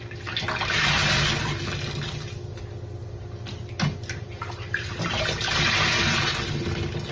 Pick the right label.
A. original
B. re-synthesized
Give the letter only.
A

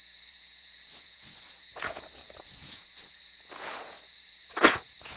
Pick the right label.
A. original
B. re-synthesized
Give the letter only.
B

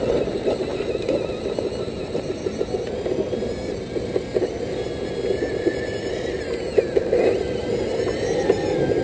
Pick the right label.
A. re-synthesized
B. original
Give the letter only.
B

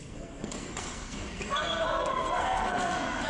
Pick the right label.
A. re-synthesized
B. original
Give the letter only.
A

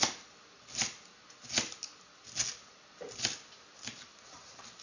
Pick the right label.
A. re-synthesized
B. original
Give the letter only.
B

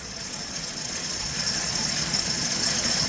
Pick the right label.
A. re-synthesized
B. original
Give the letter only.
A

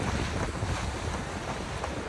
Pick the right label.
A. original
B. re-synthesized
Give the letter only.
A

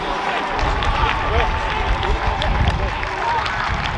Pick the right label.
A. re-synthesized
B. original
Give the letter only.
B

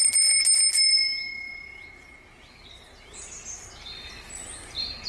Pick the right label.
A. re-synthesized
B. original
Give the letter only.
B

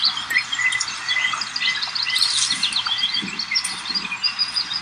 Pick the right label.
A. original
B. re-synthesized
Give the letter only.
A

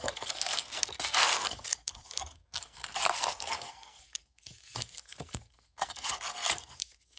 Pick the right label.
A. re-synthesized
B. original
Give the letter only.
A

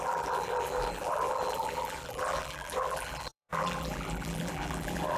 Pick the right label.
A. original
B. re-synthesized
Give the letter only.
B